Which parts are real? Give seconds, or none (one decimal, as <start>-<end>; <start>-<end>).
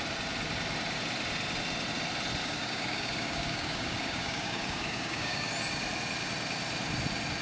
0.0-2.4; 5.5-7.4